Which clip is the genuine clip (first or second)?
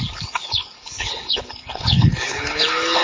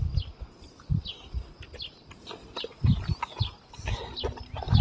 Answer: second